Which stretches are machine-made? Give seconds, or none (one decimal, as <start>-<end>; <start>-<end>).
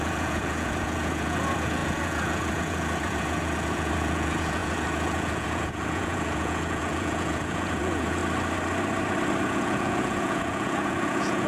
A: 0.0-8.2; 9.4-11.5